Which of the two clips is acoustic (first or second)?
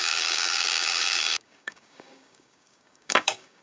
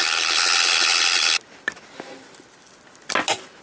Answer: second